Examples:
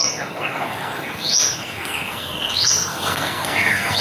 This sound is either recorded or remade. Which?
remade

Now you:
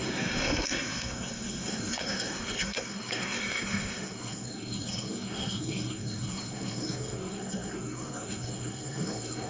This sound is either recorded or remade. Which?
remade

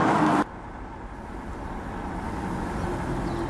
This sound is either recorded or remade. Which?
recorded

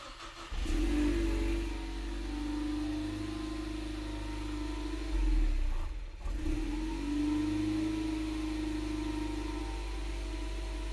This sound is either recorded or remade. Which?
recorded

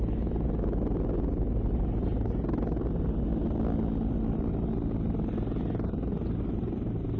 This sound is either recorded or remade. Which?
recorded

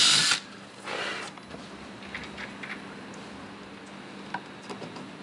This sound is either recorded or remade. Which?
recorded